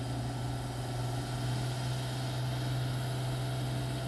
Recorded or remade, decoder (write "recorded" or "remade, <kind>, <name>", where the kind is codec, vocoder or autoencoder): recorded